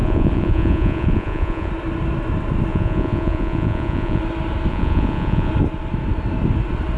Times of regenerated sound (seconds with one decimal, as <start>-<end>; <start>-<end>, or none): 0.0-1.7; 2.7-4.2; 4.7-5.5